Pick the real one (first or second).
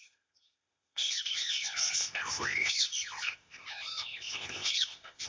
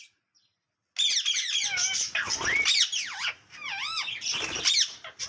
second